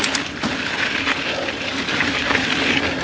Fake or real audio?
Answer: real